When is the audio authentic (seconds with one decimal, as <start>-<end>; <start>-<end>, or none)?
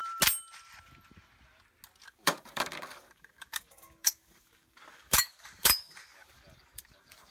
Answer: 0.0-2.1